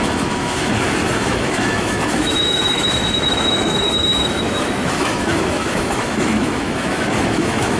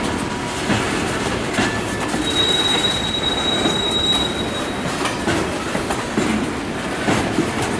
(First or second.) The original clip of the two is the second